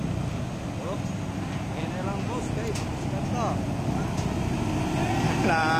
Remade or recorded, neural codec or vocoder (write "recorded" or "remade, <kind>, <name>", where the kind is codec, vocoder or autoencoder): recorded